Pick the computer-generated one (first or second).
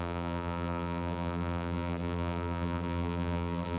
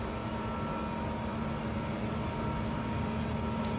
first